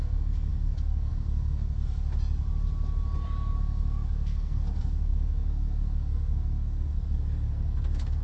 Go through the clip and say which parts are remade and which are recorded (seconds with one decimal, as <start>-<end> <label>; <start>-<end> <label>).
0.0-1.8 remade; 1.8-3.6 recorded; 3.6-8.2 remade